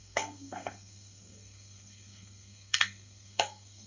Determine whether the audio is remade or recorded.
remade